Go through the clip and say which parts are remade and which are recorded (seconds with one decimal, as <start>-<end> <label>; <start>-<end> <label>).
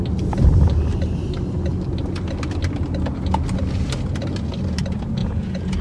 0.0-5.2 recorded; 5.2-5.8 remade